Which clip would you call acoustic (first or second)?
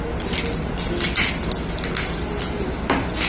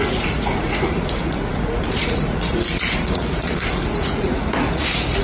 first